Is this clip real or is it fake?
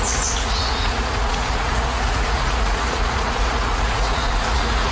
fake